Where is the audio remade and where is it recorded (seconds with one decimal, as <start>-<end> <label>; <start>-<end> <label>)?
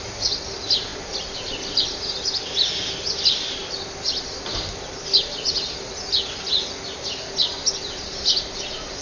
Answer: 0.0-9.0 recorded